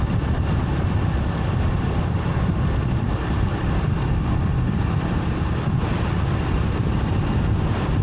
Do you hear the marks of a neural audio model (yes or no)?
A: no